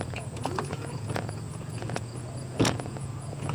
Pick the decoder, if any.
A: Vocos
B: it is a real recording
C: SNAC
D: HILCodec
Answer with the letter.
A